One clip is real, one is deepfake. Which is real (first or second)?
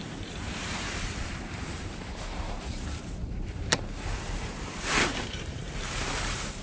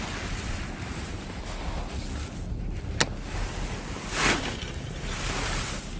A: second